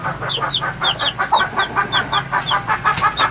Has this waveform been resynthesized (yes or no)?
no